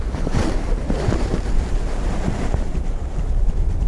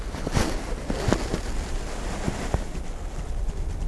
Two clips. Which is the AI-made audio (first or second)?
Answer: first